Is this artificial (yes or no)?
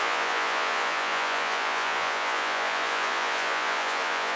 yes